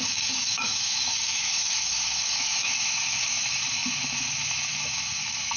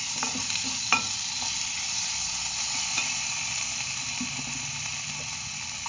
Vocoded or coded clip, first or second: first